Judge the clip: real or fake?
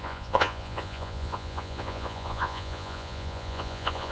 fake